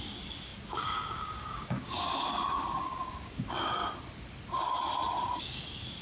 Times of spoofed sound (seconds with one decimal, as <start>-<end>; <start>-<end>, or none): 0.0-3.8; 5.4-6.0